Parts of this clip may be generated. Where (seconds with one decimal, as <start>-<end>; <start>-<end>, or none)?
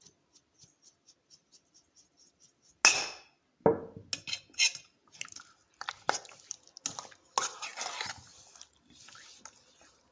7.7-9.4